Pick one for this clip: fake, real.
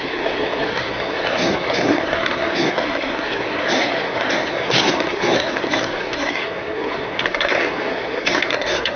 fake